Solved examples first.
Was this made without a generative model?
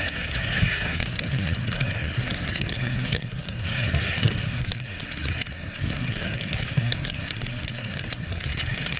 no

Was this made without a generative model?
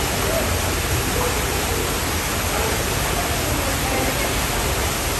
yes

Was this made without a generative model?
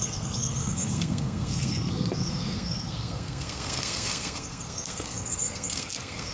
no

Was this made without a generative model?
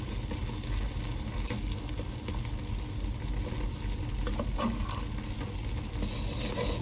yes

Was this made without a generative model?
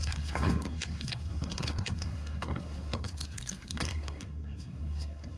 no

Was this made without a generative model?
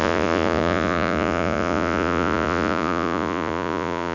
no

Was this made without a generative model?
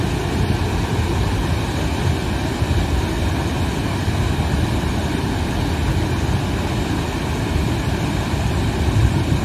yes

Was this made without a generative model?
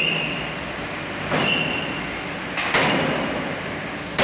yes